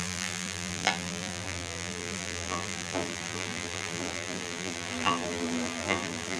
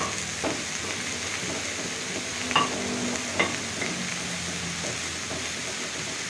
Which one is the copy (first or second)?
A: first